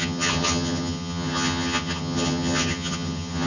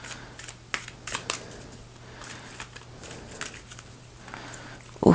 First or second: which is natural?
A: second